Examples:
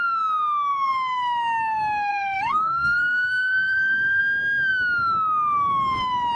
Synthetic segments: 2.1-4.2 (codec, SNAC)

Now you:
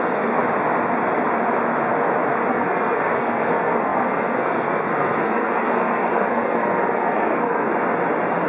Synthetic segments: 0.0-0.4 (codec, SNAC); 2.5-7.7